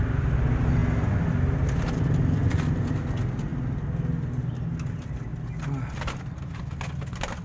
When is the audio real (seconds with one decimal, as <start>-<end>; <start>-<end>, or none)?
0.0-7.4